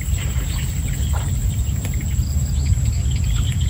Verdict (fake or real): real